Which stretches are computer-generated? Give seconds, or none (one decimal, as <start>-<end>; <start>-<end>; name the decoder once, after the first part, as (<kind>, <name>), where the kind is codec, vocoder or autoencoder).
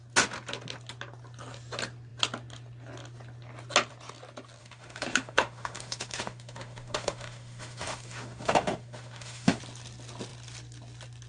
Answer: 4.6-9.6 (autoencoder, DAC-VAE)